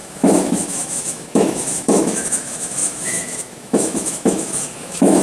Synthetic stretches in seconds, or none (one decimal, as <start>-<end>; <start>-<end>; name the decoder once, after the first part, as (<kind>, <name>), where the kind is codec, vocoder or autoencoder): 0.0-5.2 (autoencoder, DAC-VAE)